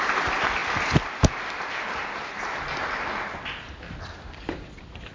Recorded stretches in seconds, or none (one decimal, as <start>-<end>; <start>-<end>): 0.0-5.1